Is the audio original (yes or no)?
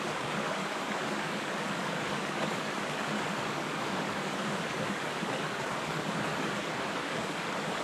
no